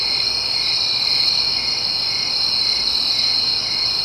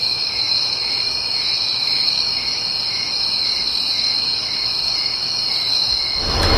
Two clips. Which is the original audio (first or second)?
first